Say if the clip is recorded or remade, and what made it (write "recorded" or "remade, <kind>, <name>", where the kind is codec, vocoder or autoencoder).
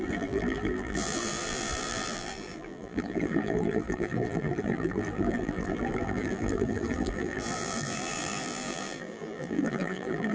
remade, vocoder, BigVGAN v2